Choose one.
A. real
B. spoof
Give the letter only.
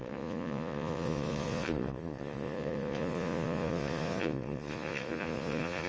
B